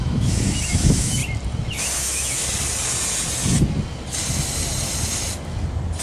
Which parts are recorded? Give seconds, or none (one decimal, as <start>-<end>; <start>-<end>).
1.2-2.0; 2.4-6.0